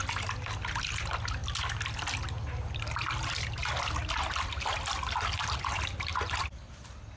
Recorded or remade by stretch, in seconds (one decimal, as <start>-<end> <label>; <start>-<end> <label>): 0.0-7.2 recorded